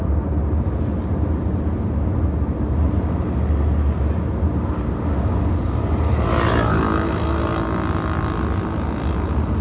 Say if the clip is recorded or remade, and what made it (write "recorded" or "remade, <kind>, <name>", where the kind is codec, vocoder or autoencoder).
recorded